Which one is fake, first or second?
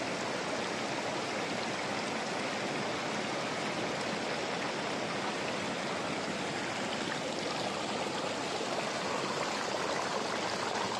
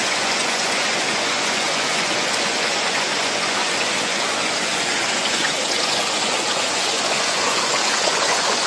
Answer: second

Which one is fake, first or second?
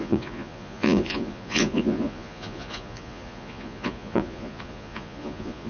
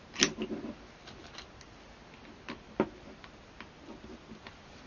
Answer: first